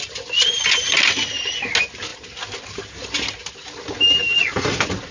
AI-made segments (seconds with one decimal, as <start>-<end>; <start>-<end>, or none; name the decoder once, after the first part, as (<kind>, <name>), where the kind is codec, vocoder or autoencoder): none